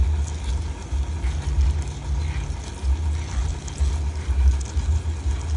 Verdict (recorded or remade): recorded